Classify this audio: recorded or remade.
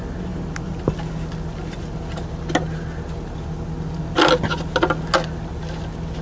recorded